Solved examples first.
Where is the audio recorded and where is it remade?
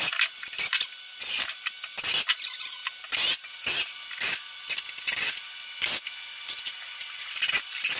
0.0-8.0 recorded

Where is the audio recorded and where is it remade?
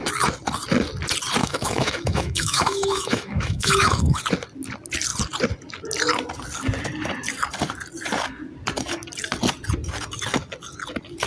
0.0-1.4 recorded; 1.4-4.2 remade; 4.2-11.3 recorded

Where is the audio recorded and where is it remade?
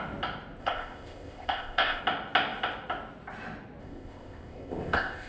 0.0-0.6 recorded; 0.6-2.0 remade; 2.0-3.8 recorded; 3.8-5.3 remade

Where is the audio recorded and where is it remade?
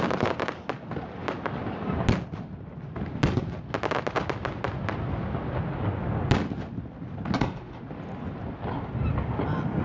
0.0-9.8 recorded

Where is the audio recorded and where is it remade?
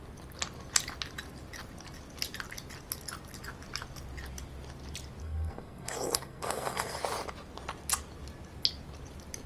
0.0-5.2 recorded; 5.2-7.0 remade; 7.0-9.5 recorded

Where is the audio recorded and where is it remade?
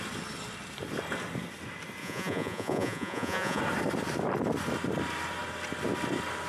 0.0-2.0 recorded; 2.0-3.6 remade; 3.6-6.5 recorded